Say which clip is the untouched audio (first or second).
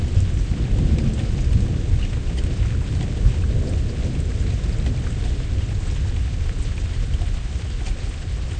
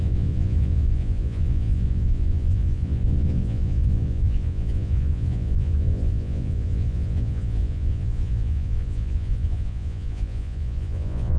first